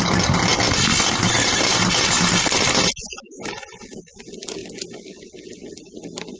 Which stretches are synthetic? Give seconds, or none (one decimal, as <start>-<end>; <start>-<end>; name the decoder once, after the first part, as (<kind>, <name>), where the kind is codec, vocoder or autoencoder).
none

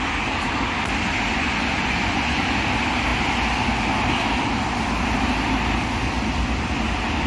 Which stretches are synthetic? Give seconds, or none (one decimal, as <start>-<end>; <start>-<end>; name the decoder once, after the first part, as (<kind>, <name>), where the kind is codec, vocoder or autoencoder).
1.3-2.4 (vocoder, Vocos)

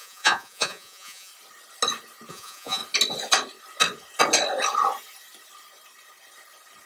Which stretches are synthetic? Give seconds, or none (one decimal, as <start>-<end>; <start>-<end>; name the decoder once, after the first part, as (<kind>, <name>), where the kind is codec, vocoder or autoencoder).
0.0-1.3 (vocoder, Vocos); 2.3-2.8

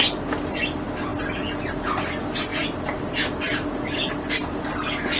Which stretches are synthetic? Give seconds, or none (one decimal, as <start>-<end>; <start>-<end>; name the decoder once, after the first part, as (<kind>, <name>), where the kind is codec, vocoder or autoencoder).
none